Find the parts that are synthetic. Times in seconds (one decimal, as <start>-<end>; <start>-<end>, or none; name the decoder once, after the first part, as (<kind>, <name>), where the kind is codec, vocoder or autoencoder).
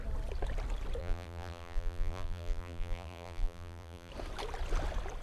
1.0-4.1 (vocoder, BigVGAN v2)